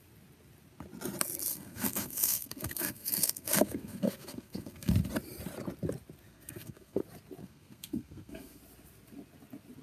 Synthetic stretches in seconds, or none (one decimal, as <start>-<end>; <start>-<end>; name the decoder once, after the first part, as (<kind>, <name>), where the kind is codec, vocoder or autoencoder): 1.5-4.9 (codec, SNAC); 6.3-7.0; 7.4-8.6